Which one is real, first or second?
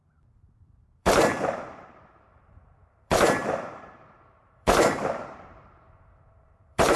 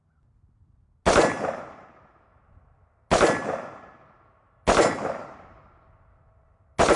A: second